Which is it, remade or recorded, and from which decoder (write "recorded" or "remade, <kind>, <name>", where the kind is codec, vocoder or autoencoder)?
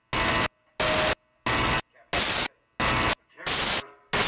recorded